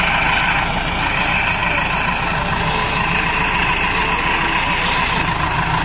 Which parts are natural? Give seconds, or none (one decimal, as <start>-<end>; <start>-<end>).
0.0-5.8